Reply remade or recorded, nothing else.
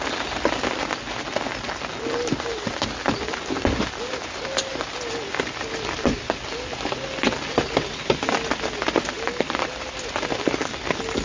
recorded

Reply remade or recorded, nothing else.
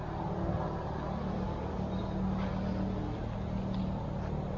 recorded